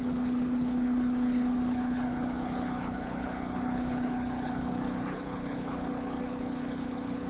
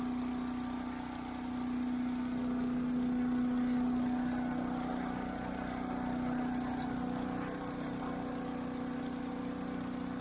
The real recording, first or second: second